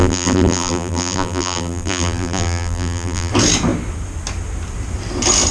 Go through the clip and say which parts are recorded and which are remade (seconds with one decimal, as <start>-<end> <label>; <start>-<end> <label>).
0.0-3.3 remade; 3.3-5.5 recorded